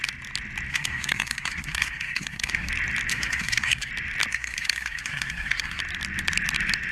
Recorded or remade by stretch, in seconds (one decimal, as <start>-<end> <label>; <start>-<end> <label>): 0.0-0.7 recorded; 0.7-2.7 remade; 2.7-3.1 recorded; 3.1-3.9 remade; 3.9-4.3 recorded; 4.3-5.8 remade; 5.8-6.9 recorded